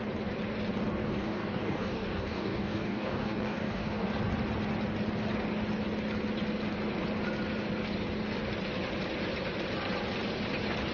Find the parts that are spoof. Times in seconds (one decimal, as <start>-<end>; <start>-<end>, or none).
1.0-4.1